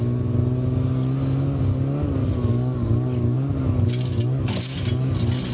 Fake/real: real